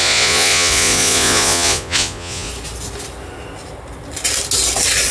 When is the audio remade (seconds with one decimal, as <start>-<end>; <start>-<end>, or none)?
0.0-2.5